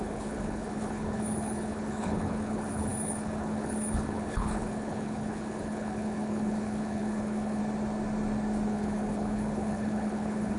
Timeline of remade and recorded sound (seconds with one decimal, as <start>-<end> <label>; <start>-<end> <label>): 0.0-7.6 remade; 7.6-8.7 recorded; 8.7-10.6 remade

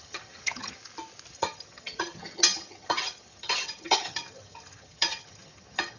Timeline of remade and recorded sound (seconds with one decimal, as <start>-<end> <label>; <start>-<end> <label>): 0.0-0.8 remade; 0.8-1.3 recorded; 1.3-6.0 remade

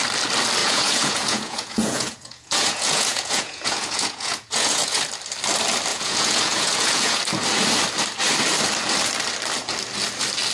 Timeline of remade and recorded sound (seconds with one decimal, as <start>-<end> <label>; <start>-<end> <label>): 0.0-0.6 recorded; 0.6-5.0 remade; 5.0-5.9 recorded; 5.9-7.2 remade; 7.2-10.5 recorded

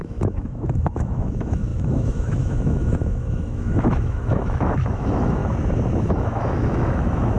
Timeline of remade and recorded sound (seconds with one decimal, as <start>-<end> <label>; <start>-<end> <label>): 0.0-5.4 remade; 5.4-6.0 recorded; 6.0-7.4 remade

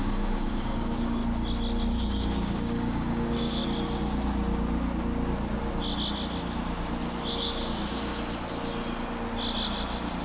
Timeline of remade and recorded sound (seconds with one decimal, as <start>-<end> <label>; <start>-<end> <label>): 0.0-1.2 remade; 1.2-1.9 recorded; 1.9-3.6 remade; 3.6-7.3 recorded; 7.3-8.1 remade; 8.1-10.2 recorded

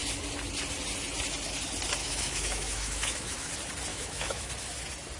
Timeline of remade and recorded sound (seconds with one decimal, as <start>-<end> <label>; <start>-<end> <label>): 0.0-2.0 recorded; 2.0-3.5 remade; 3.5-3.9 recorded; 3.9-4.5 remade; 4.5-5.2 recorded

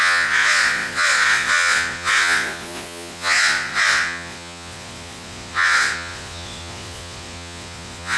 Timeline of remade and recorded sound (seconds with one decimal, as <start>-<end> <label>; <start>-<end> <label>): 0.0-8.2 remade

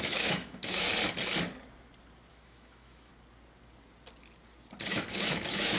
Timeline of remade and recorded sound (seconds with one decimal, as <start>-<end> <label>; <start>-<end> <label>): 0.0-0.9 remade; 0.9-2.3 recorded; 2.3-3.1 remade; 3.1-4.9 recorded; 4.9-5.8 remade